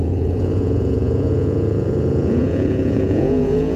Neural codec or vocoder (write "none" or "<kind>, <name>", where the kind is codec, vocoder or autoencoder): vocoder, Vocos